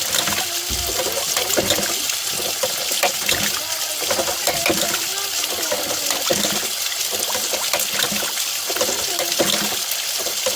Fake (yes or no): no